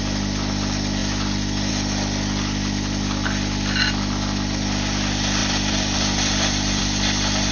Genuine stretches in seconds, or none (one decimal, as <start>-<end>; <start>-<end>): 0.0-5.4; 6.8-7.5